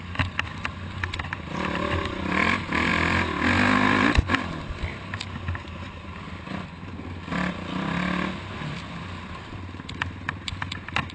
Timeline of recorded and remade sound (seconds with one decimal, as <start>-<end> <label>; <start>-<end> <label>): 0.0-11.1 recorded